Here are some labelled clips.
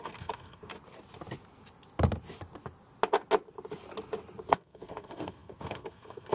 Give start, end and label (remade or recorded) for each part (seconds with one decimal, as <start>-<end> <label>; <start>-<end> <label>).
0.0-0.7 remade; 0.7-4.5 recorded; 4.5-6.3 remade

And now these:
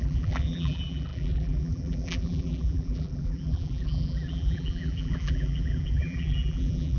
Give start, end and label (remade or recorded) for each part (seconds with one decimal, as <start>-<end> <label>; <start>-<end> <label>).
0.0-7.0 remade

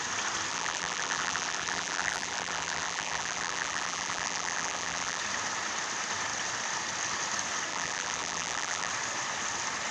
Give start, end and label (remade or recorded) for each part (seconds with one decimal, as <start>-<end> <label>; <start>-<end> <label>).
0.0-0.5 recorded; 0.5-5.2 remade; 5.2-7.7 recorded; 7.7-8.9 remade; 8.9-9.9 recorded

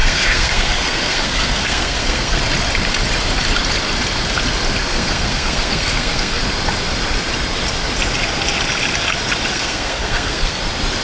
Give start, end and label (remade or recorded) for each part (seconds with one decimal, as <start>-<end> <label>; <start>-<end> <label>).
0.0-2.4 remade; 2.4-4.8 recorded; 4.8-6.4 remade; 6.4-9.5 recorded; 9.5-10.6 remade; 10.6-11.0 recorded

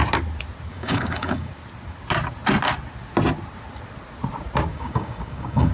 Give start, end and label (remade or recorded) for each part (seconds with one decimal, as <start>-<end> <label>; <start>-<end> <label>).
0.0-0.7 recorded; 0.7-1.5 remade; 1.5-4.7 recorded; 4.7-5.7 remade

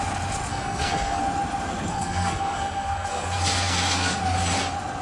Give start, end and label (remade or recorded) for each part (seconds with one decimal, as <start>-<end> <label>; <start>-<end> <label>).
0.0-0.5 recorded; 0.5-1.2 remade; 1.2-1.9 recorded; 1.9-4.2 remade; 4.2-5.0 recorded

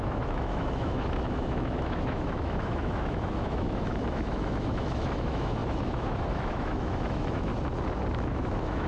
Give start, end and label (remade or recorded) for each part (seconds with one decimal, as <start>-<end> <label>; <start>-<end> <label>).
0.0-7.5 remade; 7.5-8.1 recorded; 8.1-8.9 remade

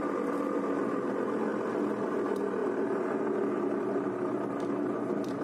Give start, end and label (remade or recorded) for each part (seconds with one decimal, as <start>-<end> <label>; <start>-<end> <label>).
0.0-5.4 recorded